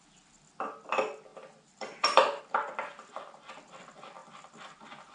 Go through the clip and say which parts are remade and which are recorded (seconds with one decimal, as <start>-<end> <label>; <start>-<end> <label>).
0.0-1.3 recorded; 1.3-2.4 remade; 2.4-5.1 recorded